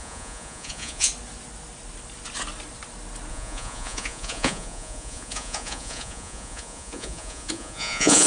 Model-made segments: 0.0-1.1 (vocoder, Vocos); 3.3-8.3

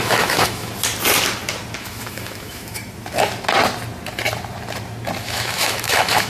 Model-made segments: 0.0-0.7 (autoencoder, DAC-VAE); 1.8-2.8; 5.2-6.3

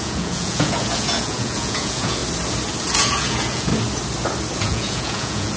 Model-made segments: 0.0-2.2 (vocoder, Vocos); 2.8-3.7; 4.6-5.6